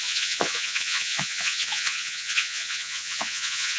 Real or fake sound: fake